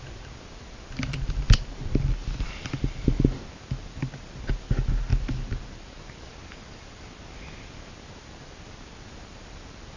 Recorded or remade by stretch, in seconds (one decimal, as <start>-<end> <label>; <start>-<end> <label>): 0.0-10.0 recorded